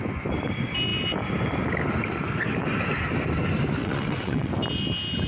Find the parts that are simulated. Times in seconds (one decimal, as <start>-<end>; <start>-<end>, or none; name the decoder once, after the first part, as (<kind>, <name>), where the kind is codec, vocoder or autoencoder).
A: 3.8-4.5 (vocoder, WaveNeXt)